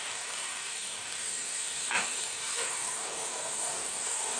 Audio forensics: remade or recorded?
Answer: remade